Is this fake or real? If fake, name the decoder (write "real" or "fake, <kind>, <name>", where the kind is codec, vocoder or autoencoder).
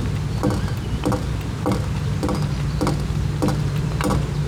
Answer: real